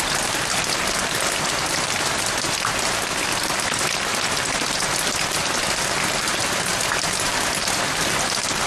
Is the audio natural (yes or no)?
yes